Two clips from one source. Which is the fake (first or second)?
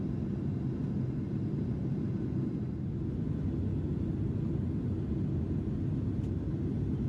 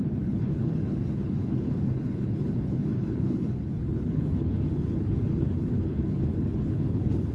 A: second